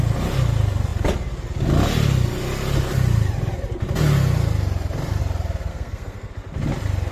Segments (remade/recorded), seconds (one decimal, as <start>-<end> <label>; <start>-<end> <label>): 0.0-5.7 recorded; 5.7-6.3 remade; 6.3-7.1 recorded